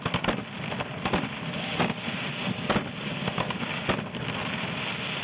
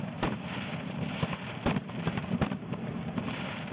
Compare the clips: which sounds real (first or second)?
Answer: first